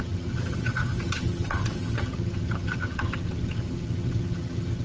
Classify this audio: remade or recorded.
remade